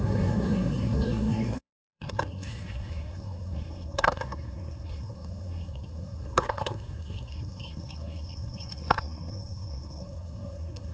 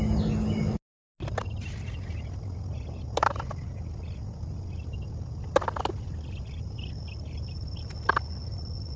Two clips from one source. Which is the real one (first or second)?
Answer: second